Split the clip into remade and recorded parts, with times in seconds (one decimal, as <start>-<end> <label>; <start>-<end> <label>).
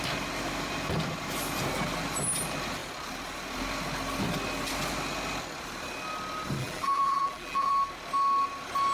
0.0-6.6 recorded; 6.6-7.7 remade; 7.7-8.9 recorded